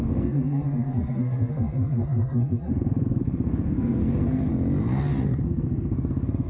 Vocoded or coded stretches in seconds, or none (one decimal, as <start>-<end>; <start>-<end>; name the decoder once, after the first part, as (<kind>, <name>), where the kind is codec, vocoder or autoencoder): 0.0-4.5 (codec, SNAC); 5.4-6.5